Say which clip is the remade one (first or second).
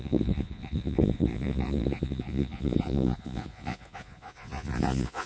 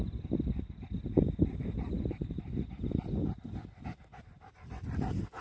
first